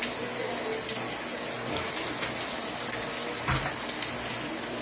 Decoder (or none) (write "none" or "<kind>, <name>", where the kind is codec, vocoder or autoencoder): none